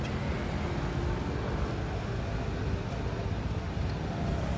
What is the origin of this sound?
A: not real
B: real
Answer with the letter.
B